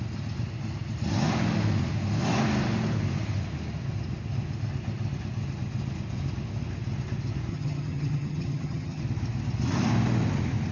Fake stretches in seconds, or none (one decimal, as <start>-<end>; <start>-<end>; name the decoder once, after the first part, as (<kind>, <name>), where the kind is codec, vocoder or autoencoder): 7.5-9.0 (vocoder, HiFi-GAN)